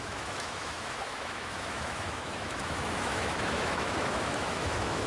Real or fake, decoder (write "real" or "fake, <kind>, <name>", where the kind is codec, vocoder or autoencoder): fake, autoencoder, DAC-VAE